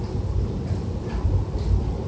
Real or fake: real